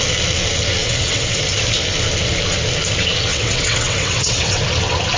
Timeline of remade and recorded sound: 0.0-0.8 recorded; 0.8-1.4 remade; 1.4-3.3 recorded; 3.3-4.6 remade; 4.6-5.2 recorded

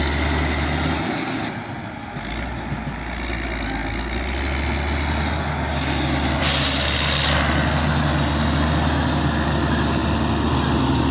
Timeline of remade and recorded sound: 0.0-11.1 recorded